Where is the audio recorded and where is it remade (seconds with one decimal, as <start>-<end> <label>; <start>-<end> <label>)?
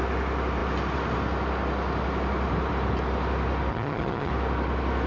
0.0-3.7 recorded; 3.7-4.3 remade; 4.3-5.1 recorded